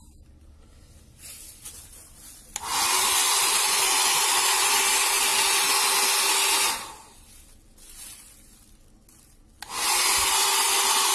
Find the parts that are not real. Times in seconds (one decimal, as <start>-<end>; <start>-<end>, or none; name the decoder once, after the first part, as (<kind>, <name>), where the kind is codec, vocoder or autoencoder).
2.7-4.8 (vocoder, Vocos)